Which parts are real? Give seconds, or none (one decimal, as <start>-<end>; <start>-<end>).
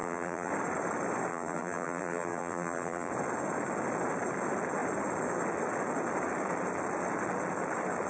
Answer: 0.5-1.3; 3.1-8.1